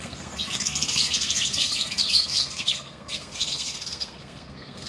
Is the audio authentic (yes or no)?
no